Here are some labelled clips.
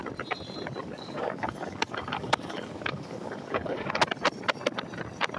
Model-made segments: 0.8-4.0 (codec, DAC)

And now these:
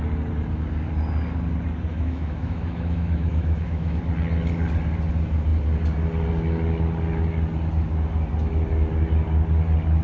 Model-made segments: 1.9-4.0 (autoencoder, DAC-VAE)

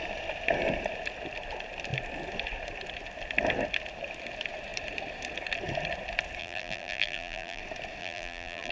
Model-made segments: 6.4-7.6 (vocoder, BigVGAN v2); 8.0-8.7

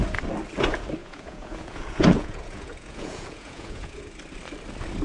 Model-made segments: 1.0-4.0 (vocoder, Vocos)

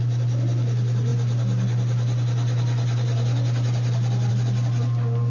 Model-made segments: 1.1-4.3 (vocoder, BigVGAN v2)